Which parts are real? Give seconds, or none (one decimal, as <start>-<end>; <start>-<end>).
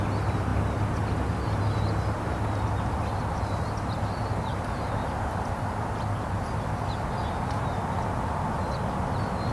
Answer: 0.0-9.5